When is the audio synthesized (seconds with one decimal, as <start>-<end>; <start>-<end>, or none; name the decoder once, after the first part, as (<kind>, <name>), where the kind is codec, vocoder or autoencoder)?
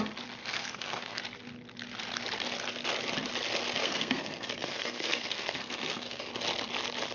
0.4-1.2 (codec, SNAC); 3.8-6.3